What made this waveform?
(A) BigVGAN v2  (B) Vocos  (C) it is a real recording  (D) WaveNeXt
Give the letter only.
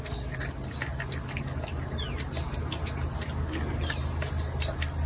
C